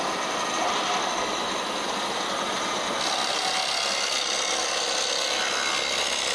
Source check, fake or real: real